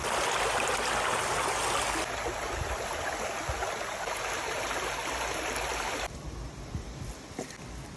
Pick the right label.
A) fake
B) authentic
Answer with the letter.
B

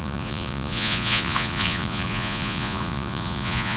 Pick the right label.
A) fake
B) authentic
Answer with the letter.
A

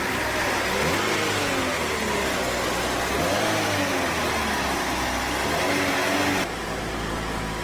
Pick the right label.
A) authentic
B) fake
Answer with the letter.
A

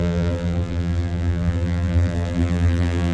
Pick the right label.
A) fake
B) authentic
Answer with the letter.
A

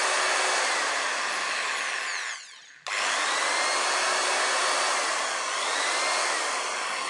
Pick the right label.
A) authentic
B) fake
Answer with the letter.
A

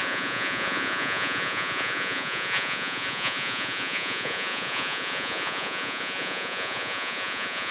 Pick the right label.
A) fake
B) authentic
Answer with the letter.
A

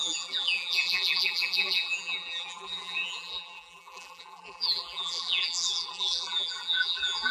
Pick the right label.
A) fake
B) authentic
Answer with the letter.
A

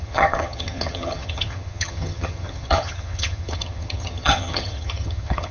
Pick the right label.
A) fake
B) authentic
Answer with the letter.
A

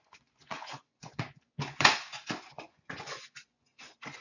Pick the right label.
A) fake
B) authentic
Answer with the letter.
A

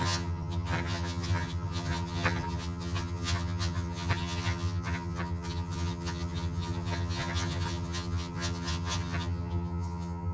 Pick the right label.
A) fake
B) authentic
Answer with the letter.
A